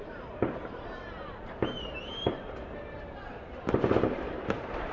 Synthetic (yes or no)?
yes